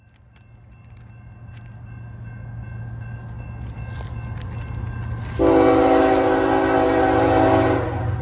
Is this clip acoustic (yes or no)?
yes